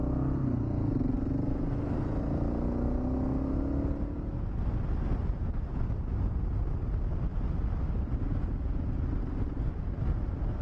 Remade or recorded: recorded